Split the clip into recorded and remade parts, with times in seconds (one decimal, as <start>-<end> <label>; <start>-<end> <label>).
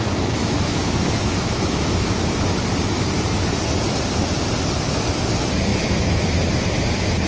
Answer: 0.0-0.4 recorded; 0.4-2.4 remade; 2.4-5.7 recorded; 5.7-6.3 remade; 6.3-7.3 recorded